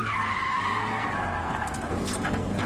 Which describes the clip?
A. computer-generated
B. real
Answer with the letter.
A